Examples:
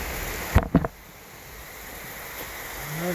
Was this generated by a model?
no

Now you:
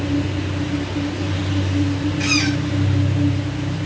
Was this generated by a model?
no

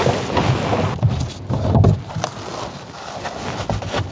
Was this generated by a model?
no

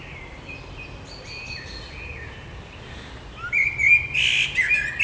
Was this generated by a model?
no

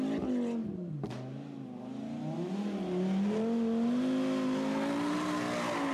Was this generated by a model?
no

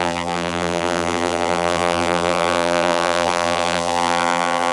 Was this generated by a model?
yes